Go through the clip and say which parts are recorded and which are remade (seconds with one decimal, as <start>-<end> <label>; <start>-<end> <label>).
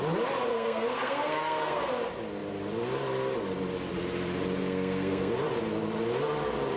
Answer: 0.0-0.5 recorded; 0.5-1.8 remade; 1.8-4.6 recorded; 4.6-5.3 remade; 5.3-6.8 recorded